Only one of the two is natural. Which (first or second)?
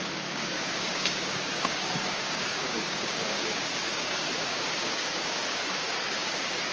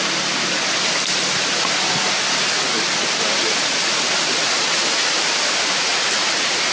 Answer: second